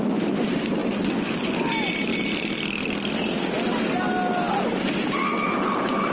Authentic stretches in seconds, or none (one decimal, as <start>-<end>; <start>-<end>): 0.0-6.1